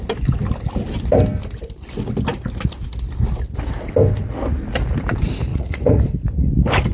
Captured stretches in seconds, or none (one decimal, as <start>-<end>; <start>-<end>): 0.0-5.5; 6.0-6.9